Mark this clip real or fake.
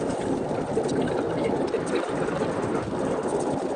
real